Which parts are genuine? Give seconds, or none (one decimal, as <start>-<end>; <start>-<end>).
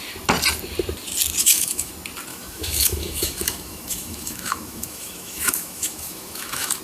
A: 0.0-1.4; 1.9-2.3